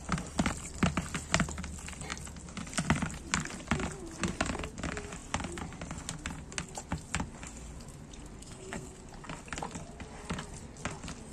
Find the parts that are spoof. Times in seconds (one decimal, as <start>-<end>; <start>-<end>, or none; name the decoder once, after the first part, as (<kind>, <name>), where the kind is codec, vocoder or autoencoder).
8.4-8.9 (codec, SNAC)